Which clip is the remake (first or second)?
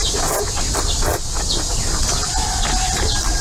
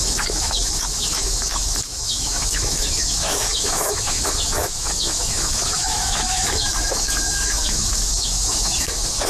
second